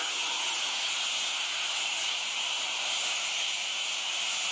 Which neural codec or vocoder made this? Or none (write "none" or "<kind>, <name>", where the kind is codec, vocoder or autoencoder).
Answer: none